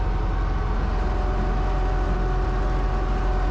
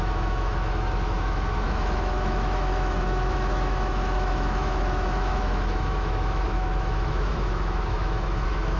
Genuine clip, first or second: first